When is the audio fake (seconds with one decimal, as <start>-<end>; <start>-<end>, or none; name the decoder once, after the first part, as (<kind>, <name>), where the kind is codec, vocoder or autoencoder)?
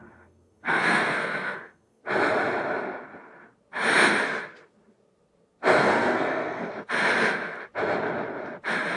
0.0-2.0 (codec, SNAC); 5.8-6.7